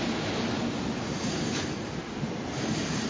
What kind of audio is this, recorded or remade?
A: remade